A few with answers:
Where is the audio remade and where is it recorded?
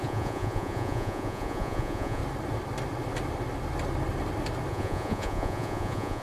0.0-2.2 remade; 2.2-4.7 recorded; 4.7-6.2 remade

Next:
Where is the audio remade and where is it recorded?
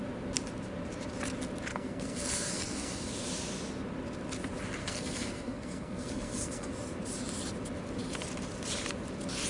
0.0-1.7 recorded; 1.7-3.1 remade; 3.1-4.8 recorded; 4.8-6.7 remade; 6.7-9.5 recorded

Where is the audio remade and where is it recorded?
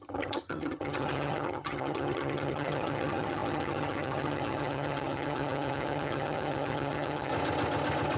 0.0-7.3 remade; 7.3-8.2 recorded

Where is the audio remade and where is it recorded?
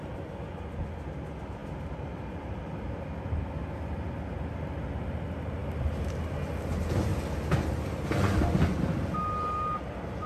0.0-10.3 recorded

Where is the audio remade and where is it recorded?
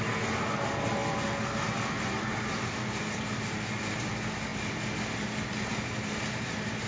0.0-6.9 recorded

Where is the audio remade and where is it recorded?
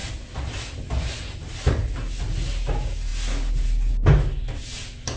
0.0-5.2 recorded